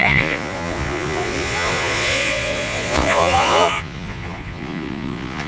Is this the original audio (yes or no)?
no